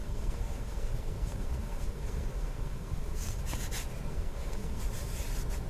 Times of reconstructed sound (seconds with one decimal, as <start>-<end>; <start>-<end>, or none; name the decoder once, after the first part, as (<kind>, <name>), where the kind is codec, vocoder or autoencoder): 0.0-3.4 (codec, SNAC); 4.1-4.8

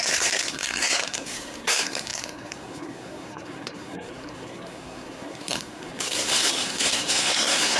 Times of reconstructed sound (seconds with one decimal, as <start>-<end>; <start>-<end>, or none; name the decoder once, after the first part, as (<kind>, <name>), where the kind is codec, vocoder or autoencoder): 0.0-7.8 (codec, SNAC)

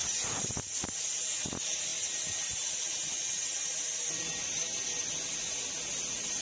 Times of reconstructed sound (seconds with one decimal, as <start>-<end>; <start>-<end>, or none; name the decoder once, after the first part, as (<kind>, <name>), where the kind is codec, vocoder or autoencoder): none

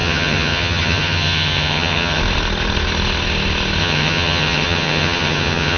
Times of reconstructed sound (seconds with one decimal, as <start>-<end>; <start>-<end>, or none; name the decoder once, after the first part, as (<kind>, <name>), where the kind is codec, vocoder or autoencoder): 0.0-2.2 (vocoder, HiFi-GAN); 3.8-5.8